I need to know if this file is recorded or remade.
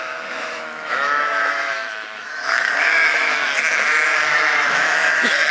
remade